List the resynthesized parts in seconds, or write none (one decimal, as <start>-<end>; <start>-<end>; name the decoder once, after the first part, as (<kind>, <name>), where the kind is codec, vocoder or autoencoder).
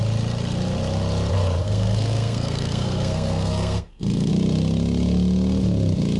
1.6-4.3 (codec, SNAC)